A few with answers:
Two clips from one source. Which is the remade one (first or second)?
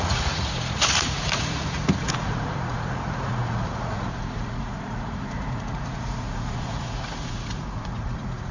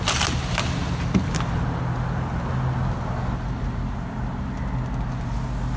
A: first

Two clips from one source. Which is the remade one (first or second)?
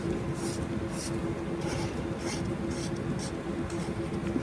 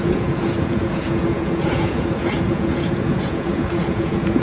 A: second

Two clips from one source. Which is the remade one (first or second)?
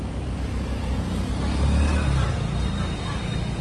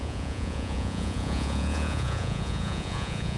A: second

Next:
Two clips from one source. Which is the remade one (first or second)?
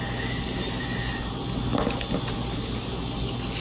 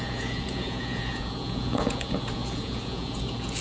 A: second